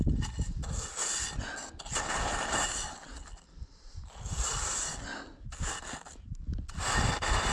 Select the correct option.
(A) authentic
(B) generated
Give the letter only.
A